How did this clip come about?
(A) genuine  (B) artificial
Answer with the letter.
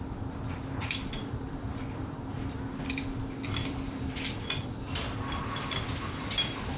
B